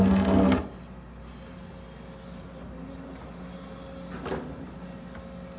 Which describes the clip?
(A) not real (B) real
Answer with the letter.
B